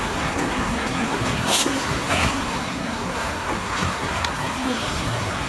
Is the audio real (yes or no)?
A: no